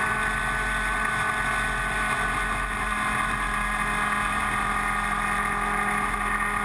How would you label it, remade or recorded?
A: recorded